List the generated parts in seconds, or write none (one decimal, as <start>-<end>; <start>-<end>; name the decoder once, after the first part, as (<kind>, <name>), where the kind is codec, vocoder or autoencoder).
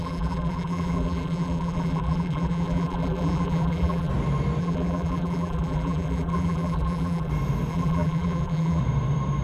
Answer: 0.0-4.1 (vocoder, BigVGAN v2); 4.6-7.3; 7.7-8.8